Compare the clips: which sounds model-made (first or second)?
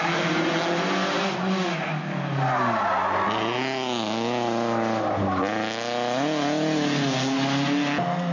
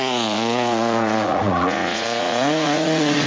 second